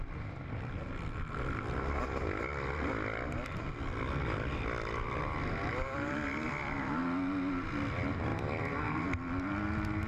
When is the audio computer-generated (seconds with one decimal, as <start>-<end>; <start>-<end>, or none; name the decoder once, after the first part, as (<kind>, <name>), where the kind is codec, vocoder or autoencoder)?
none